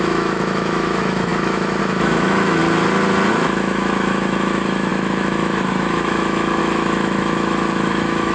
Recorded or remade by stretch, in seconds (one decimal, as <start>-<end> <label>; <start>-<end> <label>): 0.0-2.6 remade; 2.6-3.3 recorded; 3.3-8.3 remade